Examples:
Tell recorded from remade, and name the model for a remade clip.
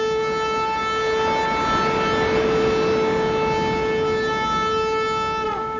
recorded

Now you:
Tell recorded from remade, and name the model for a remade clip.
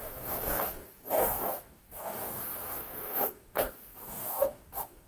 remade, codec, DAC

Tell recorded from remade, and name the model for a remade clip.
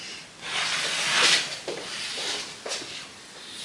recorded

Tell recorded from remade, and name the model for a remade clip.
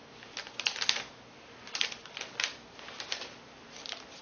recorded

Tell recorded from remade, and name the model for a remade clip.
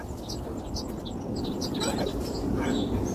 recorded